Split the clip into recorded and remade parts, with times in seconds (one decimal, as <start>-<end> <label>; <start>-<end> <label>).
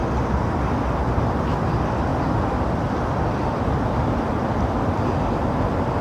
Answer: 0.0-6.0 recorded